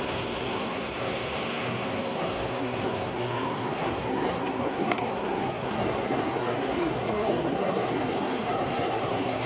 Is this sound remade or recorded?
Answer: remade